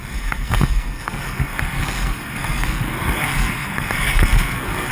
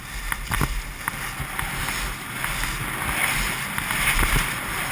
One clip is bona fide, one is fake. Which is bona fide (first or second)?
second